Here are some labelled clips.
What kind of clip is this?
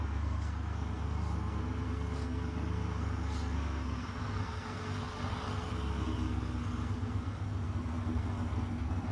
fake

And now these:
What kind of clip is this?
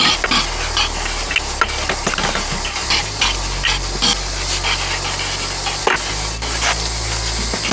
real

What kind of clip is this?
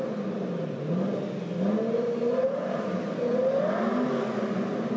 real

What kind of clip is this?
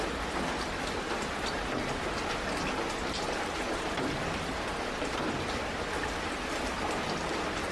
real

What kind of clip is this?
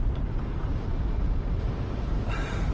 fake